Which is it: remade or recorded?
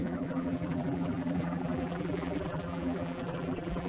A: remade